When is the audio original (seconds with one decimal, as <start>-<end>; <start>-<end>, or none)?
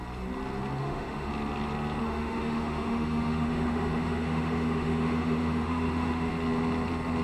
0.0-0.8; 1.3-2.0; 6.3-7.2